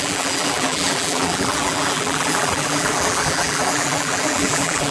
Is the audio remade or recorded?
remade